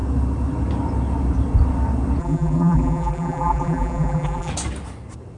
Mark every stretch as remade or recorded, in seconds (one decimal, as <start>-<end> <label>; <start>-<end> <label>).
0.0-2.2 recorded; 2.2-4.5 remade; 4.5-5.4 recorded